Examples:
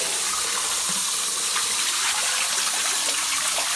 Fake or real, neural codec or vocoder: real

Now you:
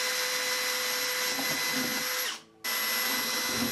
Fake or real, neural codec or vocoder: real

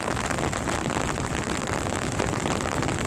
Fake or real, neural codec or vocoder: real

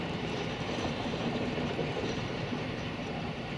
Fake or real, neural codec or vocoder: fake, vocoder, BigVGAN v2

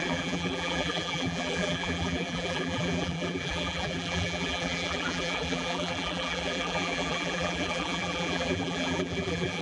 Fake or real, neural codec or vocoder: fake, vocoder, BigVGAN v2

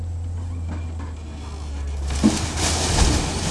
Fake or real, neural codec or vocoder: real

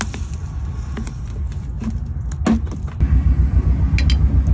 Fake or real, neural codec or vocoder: real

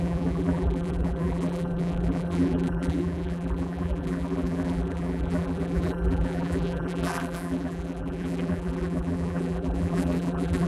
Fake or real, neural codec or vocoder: fake, vocoder, BigVGAN v2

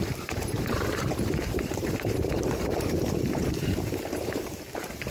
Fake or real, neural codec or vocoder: fake, vocoder, BigVGAN v2